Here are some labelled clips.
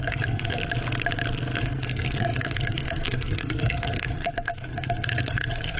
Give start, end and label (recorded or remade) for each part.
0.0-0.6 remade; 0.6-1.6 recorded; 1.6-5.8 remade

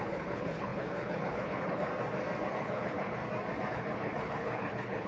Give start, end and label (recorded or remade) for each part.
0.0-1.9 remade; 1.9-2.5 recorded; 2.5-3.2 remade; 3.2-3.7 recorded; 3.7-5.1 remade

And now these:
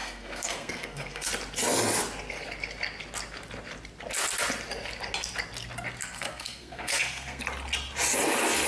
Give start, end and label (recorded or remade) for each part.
0.0-1.3 remade; 1.3-6.0 recorded; 6.0-7.4 remade; 7.4-8.7 recorded

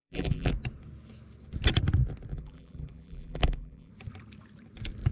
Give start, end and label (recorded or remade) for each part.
0.0-0.5 remade; 0.5-2.3 recorded; 2.3-3.9 remade; 3.9-5.1 recorded